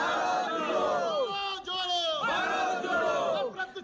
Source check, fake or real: real